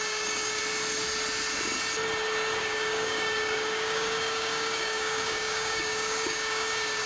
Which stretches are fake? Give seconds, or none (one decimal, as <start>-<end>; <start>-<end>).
0.0-0.6; 2.6-7.1

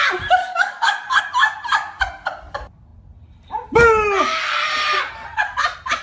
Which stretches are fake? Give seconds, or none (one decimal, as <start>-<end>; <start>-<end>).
0.4-1.2

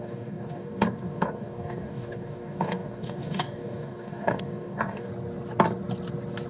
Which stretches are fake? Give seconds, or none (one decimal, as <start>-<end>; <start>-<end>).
0.0-5.1